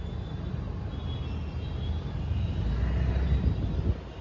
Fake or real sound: real